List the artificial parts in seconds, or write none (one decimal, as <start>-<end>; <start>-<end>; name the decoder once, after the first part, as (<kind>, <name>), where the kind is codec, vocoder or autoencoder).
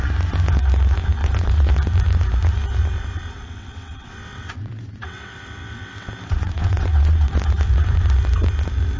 1.2-1.7 (vocoder, WaveNeXt); 3.4-7.3